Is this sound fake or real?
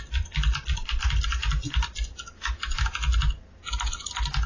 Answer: real